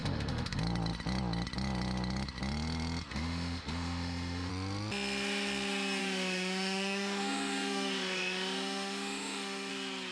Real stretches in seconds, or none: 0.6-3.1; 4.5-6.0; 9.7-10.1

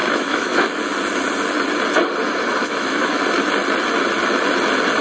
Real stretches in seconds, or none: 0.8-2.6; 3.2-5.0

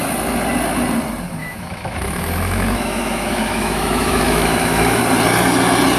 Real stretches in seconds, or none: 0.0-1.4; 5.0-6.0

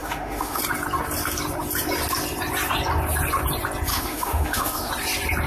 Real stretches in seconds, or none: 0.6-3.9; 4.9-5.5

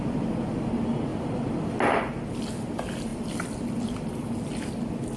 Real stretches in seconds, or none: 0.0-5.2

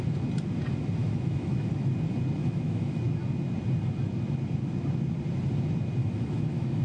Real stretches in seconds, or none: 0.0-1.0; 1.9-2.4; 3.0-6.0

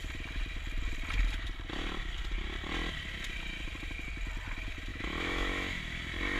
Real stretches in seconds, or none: 0.0-4.9; 5.8-6.4

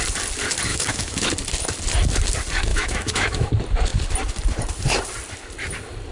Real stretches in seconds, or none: 0.0-0.7; 1.3-2.7; 3.5-6.1